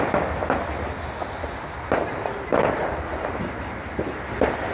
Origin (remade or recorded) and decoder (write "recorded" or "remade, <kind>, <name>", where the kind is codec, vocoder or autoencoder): recorded